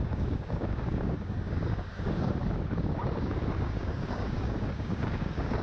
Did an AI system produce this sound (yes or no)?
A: yes